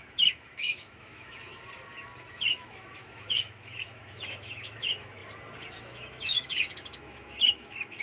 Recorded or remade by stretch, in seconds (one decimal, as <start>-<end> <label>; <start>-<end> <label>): 0.0-1.5 remade; 1.5-2.3 recorded; 2.3-5.2 remade; 5.2-5.8 recorded; 5.8-8.0 remade